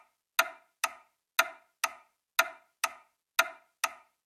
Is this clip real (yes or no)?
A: yes